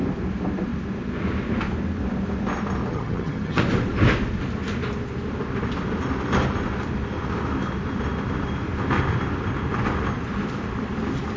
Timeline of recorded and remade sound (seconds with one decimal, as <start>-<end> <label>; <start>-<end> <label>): 0.0-2.9 recorded; 2.9-3.6 remade; 3.6-11.4 recorded